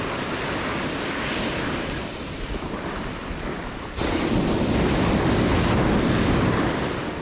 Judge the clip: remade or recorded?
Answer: recorded